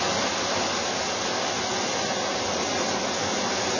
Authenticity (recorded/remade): recorded